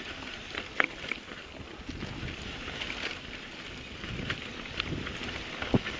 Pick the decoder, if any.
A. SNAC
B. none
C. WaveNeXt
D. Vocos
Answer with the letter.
B